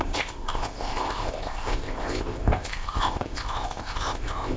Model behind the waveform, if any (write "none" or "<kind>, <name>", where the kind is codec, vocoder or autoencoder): codec, ZipCodec